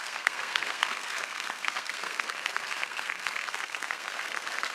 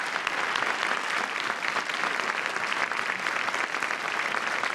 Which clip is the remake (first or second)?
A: first